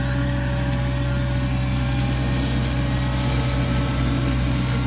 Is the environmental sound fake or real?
real